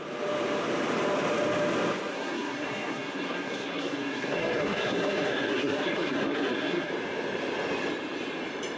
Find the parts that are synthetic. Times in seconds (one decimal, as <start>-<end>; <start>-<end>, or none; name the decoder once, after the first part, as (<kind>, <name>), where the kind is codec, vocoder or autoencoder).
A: 2.1-6.9 (codec, SNAC)